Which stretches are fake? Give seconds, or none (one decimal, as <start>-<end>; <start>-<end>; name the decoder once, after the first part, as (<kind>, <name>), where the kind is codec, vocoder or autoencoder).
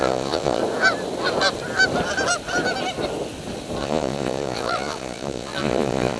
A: 0.0-0.6 (vocoder, Vocos); 3.8-6.2